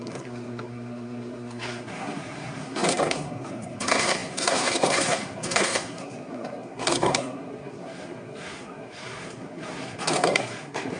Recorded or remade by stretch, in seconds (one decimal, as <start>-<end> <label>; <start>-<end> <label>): 0.0-11.0 remade